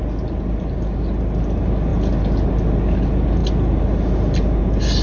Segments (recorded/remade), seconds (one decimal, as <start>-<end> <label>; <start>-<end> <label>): 0.0-5.0 recorded